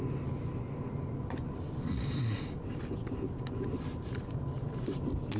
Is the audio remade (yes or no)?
no